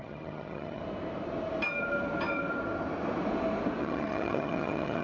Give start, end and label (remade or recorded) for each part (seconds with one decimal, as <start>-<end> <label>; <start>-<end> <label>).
0.0-0.8 remade; 0.8-3.8 recorded; 3.8-5.0 remade